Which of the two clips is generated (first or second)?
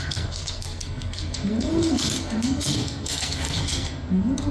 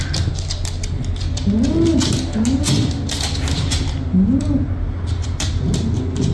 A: first